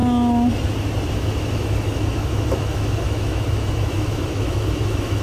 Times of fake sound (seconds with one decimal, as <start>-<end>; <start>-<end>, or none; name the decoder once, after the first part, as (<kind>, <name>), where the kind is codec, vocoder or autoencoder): 1.1-5.2 (autoencoder, DAC-VAE)